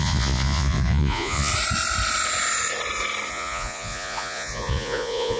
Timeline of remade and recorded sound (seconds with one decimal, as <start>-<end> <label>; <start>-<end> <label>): 0.0-1.5 remade; 1.5-3.3 recorded; 3.3-5.4 remade